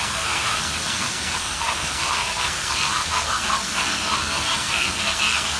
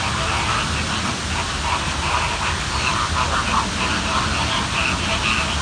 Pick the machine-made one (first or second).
first